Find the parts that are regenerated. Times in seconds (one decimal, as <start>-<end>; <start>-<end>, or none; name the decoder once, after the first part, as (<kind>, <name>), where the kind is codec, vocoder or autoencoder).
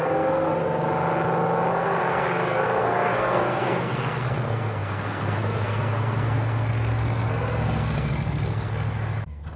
0.0-0.5 (codec, SNAC); 1.7-9.6